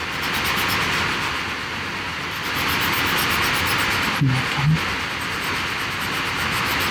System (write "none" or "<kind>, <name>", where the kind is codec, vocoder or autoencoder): none